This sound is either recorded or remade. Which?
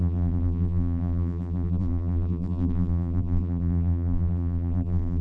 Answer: remade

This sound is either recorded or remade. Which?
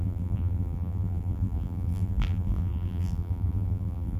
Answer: remade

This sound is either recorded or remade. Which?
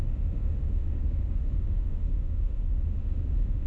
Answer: remade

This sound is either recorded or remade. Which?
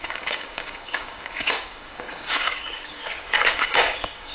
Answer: remade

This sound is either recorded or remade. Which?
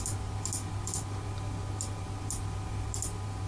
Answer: recorded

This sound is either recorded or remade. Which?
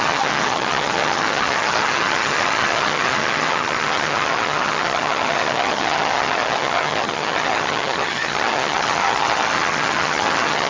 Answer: remade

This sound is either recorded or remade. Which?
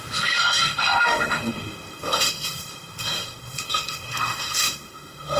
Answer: remade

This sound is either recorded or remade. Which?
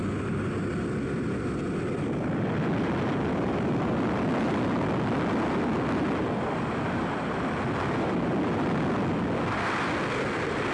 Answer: recorded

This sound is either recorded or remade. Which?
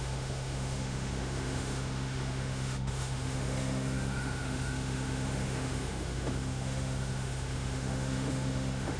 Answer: remade